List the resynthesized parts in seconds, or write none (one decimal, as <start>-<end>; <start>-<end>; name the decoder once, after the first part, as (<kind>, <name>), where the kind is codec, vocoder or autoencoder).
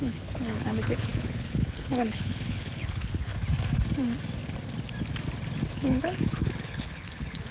0.0-3.3 (codec, HILCodec); 5.7-7.5